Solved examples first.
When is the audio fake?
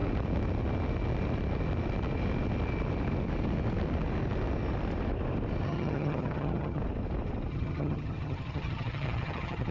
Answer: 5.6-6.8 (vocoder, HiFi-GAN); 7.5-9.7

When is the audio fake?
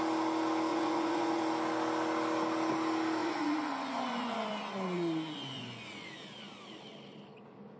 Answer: 0.7-1.4 (vocoder, Vocos); 3.2-6.1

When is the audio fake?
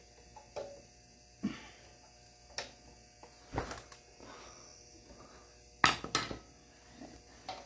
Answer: none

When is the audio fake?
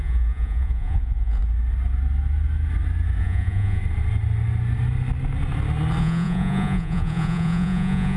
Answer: 0.0-1.4 (vocoder, Vocos); 3.2-3.8; 6.0-8.2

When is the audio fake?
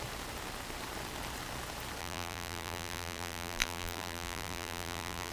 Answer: 2.0-5.3 (vocoder, BigVGAN v2)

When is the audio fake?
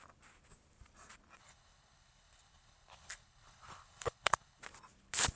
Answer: 1.4-4.6 (codec, HILCodec)